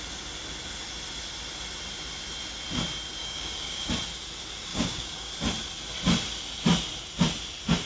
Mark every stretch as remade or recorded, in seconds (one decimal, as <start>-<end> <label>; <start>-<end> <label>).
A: 0.0-3.2 recorded; 3.2-3.9 remade; 3.9-4.7 recorded; 4.7-5.3 remade; 5.3-7.9 recorded